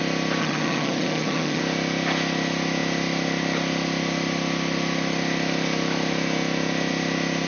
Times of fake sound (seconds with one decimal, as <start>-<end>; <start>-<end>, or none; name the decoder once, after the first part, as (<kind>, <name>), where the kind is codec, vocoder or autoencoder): 0.4-1.6 (vocoder, HiFi-GAN)